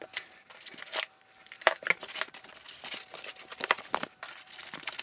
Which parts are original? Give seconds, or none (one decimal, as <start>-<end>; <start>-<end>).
0.0-5.0